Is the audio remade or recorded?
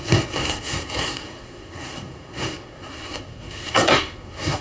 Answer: remade